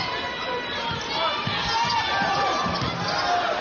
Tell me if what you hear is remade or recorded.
recorded